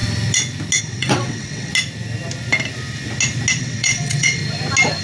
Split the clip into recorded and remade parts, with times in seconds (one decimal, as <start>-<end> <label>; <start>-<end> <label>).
0.0-0.8 recorded; 0.8-1.7 remade; 1.7-3.6 recorded; 3.6-4.4 remade; 4.4-5.0 recorded